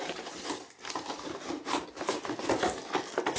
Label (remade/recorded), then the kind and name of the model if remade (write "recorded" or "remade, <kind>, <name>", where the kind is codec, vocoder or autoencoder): recorded